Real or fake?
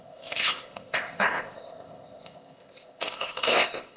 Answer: fake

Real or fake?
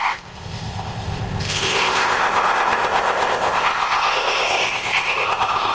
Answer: fake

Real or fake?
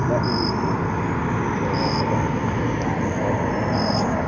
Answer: real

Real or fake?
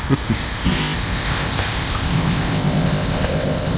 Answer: fake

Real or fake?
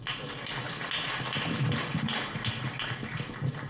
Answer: real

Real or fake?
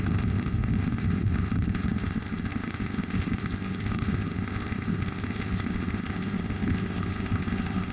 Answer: fake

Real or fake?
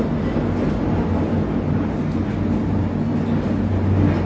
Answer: real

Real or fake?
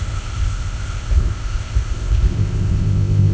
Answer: fake